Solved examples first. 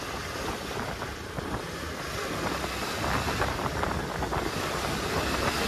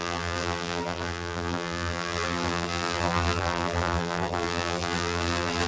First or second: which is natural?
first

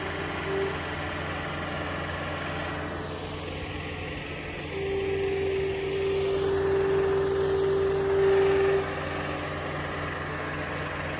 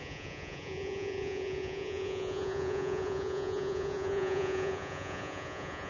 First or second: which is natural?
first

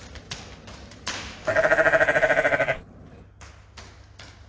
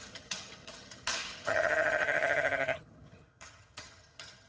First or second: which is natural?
first